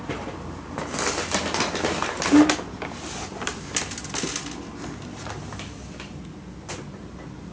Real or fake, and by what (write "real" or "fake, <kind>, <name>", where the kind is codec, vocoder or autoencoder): real